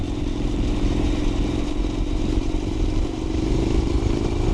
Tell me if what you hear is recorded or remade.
remade